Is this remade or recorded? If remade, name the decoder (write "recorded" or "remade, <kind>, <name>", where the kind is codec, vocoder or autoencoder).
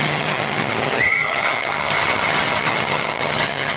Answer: remade, vocoder, HiFi-GAN